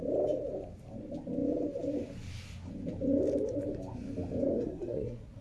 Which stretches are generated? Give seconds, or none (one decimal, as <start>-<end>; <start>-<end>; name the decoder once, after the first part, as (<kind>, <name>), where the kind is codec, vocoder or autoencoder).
4.5-5.4 (codec, SNAC)